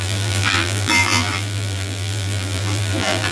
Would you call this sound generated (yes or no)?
yes